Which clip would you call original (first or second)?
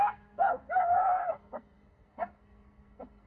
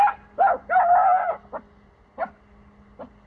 second